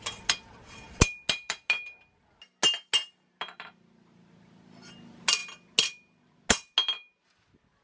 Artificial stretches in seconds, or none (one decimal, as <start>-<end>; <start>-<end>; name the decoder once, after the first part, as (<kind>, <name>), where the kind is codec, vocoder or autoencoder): none